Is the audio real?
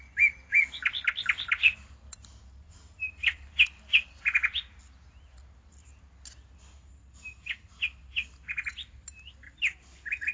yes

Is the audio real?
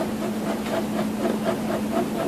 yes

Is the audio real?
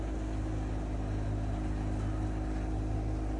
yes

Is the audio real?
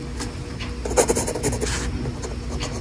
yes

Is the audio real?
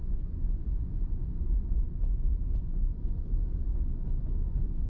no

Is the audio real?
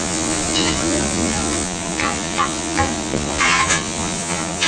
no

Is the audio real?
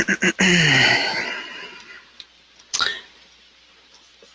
yes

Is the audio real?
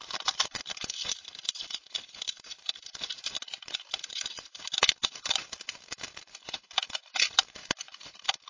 yes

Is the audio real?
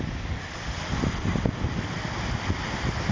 yes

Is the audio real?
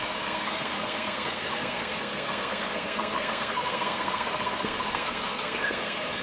no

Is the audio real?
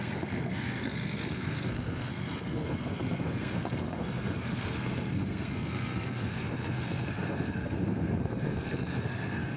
no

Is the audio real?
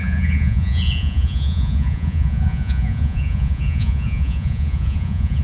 no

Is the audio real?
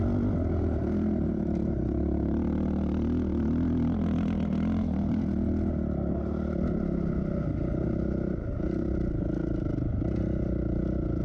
yes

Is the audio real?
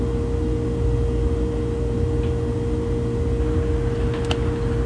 yes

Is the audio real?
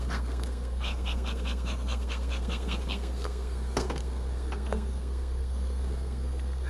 no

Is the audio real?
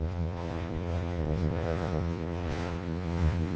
no